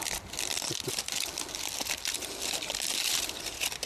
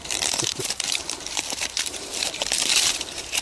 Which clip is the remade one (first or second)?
second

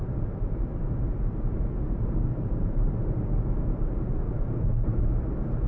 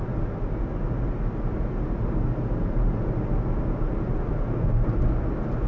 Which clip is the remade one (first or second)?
first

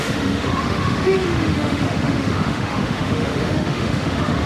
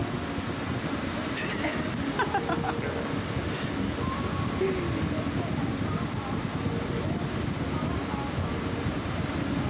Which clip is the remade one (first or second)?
first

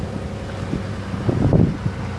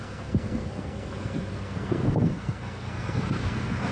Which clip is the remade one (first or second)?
second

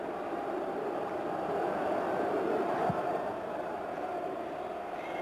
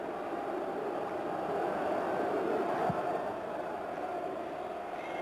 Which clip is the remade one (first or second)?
first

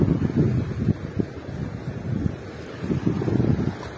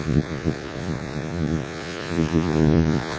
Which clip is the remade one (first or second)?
second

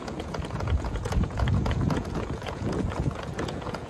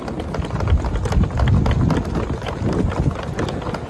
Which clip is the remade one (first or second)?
first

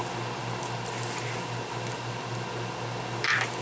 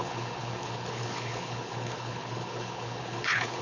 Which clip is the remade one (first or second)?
second